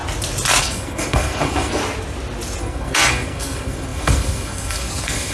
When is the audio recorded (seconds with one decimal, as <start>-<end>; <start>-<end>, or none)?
0.0-0.6; 1.8-2.6